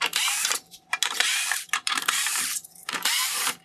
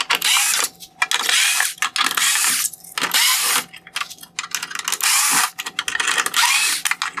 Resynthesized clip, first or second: first